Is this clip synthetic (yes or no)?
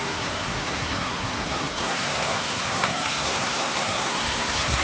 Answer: yes